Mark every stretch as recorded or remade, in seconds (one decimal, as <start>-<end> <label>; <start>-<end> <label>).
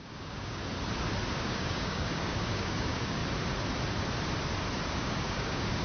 0.0-0.6 remade; 0.6-1.3 recorded; 1.3-3.2 remade; 3.2-5.0 recorded; 5.0-5.8 remade